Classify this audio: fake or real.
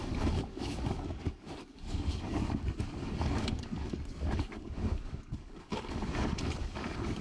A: fake